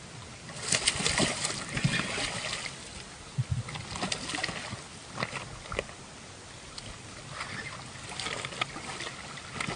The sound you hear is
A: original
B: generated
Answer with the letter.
A